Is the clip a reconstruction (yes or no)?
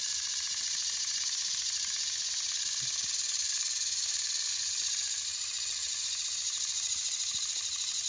no